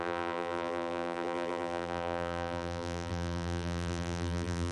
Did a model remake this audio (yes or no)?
yes